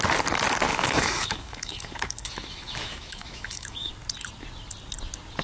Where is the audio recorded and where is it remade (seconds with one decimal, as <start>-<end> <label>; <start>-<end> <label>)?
0.0-0.7 recorded; 0.7-3.9 remade; 3.9-5.4 recorded